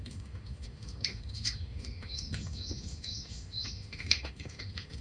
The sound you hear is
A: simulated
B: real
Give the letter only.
A